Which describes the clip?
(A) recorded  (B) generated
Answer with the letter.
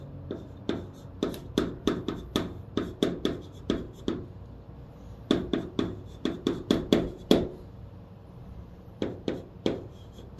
B